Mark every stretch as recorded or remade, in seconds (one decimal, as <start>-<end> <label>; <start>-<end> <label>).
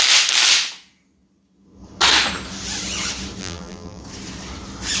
0.0-3.4 recorded; 3.4-4.0 remade; 4.0-5.0 recorded